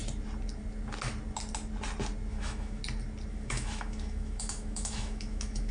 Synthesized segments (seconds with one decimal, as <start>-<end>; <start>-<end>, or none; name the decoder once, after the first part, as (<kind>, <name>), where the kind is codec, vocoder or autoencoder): 2.3-2.8 (autoencoder, DAC-VAE); 3.3-5.7